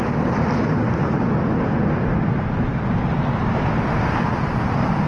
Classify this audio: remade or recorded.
recorded